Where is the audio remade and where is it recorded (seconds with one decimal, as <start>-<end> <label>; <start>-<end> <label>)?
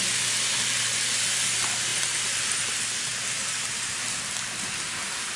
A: 0.0-5.4 recorded